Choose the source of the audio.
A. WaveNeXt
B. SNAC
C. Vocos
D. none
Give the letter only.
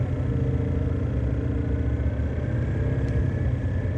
D